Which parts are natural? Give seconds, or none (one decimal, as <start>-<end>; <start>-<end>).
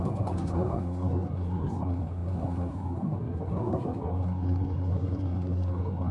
none